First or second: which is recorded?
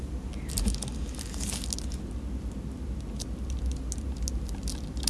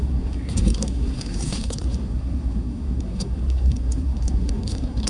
first